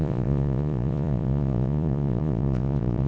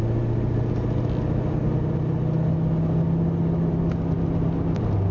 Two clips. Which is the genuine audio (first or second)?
second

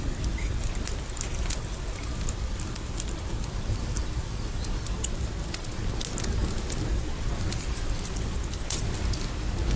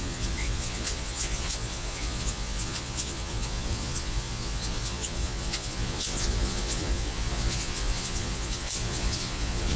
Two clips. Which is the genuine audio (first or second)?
first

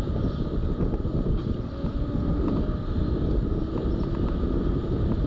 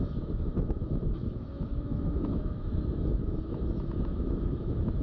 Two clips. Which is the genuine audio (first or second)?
first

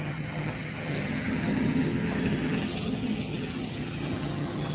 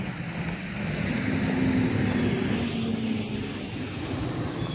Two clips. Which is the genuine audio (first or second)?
second